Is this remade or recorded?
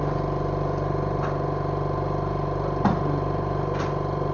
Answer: recorded